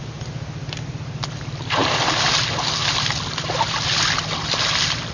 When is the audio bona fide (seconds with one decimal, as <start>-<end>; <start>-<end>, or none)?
0.0-5.1